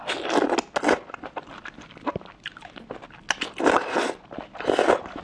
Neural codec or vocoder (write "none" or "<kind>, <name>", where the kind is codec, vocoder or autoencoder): none